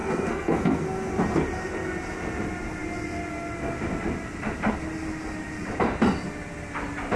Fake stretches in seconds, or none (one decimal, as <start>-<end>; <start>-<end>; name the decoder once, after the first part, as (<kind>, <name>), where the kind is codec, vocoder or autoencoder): 0.0-1.1 (codec, SNAC)